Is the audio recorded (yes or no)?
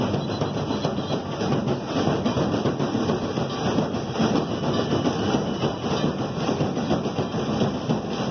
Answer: yes